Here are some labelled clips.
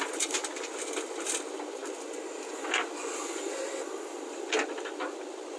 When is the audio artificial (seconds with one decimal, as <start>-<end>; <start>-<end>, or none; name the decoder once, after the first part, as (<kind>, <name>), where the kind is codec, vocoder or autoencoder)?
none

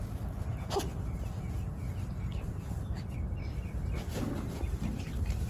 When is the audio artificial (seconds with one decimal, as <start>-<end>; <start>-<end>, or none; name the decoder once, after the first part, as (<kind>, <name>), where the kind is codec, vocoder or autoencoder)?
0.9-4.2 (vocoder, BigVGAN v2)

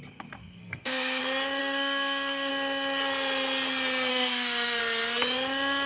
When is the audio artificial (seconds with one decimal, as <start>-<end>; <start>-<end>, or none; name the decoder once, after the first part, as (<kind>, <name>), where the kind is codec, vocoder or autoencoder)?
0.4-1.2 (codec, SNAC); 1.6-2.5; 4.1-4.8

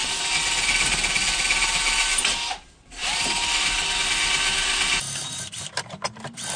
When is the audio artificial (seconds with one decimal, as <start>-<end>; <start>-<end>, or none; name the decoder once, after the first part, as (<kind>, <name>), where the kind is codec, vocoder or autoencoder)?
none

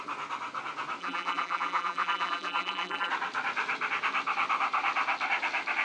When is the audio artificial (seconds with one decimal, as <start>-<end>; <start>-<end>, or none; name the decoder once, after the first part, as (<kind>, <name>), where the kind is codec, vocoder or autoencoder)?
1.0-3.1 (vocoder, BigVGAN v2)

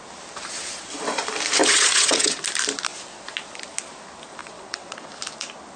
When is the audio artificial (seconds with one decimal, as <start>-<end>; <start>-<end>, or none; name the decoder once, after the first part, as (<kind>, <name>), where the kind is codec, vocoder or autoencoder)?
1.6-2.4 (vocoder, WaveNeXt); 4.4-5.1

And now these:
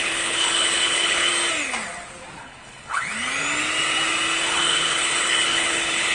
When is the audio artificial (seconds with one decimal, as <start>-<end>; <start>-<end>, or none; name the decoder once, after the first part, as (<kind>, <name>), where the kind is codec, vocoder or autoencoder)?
0.0-1.3 (codec, HILCodec); 2.4-3.1; 4.5-6.1

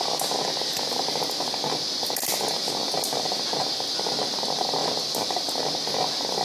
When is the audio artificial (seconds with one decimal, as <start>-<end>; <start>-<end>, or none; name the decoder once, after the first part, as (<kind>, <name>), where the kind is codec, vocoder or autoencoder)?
none